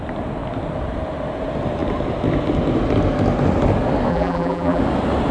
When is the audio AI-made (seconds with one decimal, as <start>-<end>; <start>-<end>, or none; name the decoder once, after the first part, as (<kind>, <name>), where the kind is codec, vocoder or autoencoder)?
4.1-4.8 (vocoder, BigVGAN v2)